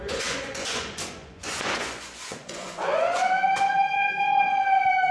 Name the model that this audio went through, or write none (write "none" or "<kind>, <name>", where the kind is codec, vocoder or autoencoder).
vocoder, Vocos